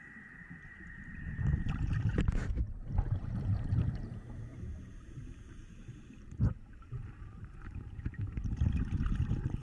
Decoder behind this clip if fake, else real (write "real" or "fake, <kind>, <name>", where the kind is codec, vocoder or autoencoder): fake, vocoder, BigVGAN v2